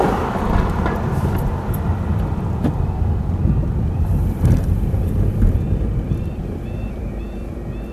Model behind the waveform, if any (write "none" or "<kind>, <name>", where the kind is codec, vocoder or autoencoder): vocoder, BigVGAN v2